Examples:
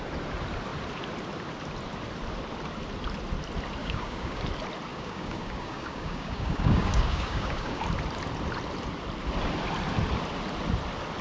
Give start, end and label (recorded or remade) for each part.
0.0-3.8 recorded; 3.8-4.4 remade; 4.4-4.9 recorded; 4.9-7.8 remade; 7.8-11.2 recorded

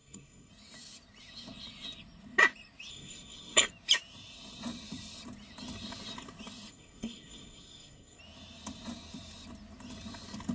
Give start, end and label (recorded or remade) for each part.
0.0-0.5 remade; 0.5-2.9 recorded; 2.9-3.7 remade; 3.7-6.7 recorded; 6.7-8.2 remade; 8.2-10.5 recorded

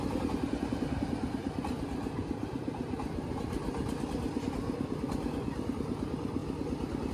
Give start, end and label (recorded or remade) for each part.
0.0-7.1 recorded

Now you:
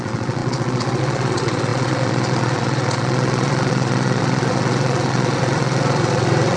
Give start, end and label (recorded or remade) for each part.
0.0-6.6 remade

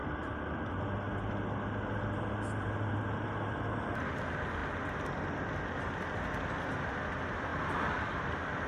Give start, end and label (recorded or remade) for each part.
0.0-8.7 recorded